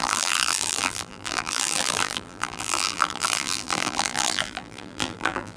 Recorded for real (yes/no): no